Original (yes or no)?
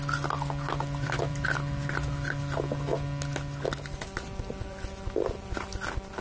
yes